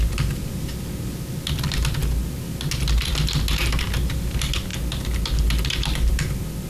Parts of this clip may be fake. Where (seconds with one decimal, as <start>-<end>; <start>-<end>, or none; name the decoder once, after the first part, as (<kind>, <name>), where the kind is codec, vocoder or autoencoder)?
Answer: none